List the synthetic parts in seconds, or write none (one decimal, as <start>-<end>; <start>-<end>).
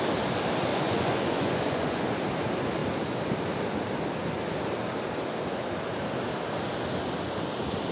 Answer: 0.7-2.2